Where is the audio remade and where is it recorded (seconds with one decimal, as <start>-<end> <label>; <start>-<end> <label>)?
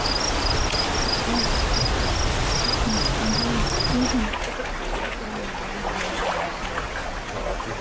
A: 0.0-7.8 recorded